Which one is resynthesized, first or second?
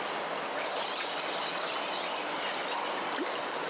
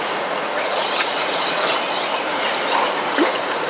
second